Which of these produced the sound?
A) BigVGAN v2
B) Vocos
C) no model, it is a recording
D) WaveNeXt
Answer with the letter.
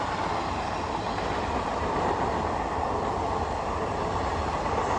C